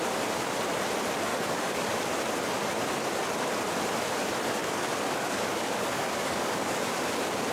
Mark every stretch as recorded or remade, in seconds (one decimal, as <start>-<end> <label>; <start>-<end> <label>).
0.0-1.3 recorded; 1.3-1.9 remade; 1.9-4.6 recorded; 4.6-6.8 remade; 6.8-7.5 recorded

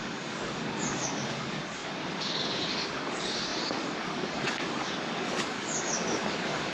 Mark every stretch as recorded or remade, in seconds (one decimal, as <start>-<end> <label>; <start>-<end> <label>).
0.0-6.7 remade